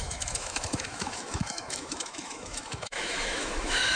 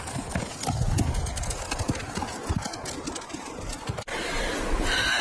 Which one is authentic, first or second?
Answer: second